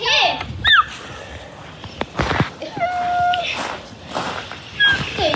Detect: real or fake real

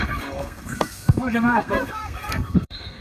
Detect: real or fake fake